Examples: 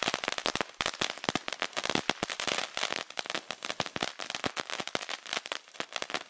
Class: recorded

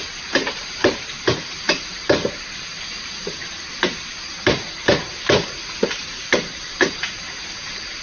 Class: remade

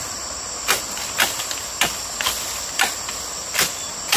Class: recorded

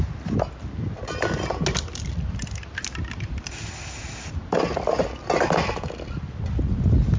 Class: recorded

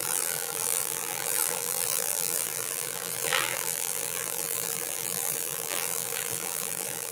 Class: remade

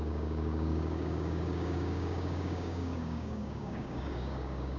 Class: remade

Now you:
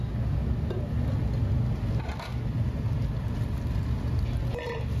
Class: recorded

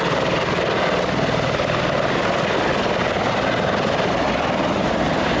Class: recorded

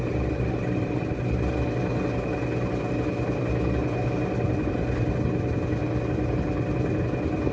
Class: recorded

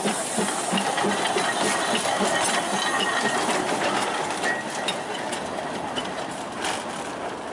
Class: recorded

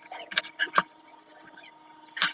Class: recorded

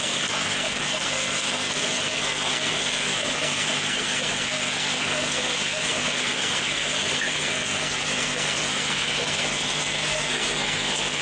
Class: remade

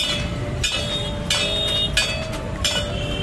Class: recorded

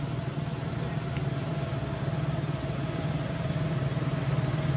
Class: recorded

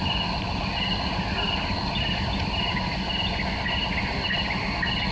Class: recorded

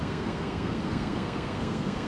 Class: remade